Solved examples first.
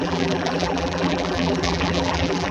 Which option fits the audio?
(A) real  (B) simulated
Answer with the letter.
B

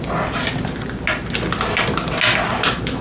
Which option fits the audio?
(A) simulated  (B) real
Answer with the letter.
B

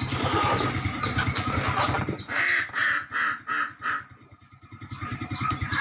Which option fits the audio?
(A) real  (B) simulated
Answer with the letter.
A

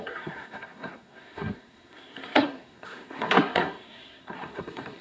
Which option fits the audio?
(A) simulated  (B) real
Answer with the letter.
A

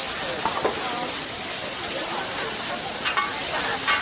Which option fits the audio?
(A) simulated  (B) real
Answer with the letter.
B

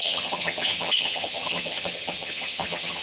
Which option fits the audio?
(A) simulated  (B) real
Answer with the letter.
A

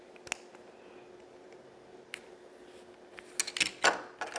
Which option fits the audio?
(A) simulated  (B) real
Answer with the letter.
B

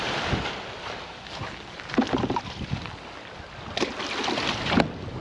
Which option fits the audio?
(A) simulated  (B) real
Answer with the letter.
B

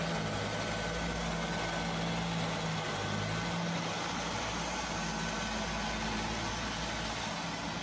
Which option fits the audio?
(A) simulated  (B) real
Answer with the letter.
B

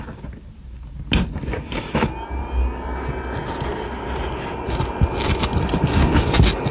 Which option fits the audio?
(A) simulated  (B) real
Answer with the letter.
B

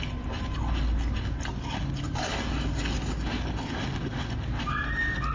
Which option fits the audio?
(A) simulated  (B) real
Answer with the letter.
B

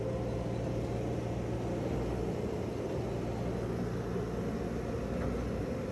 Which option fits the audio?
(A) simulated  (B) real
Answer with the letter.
B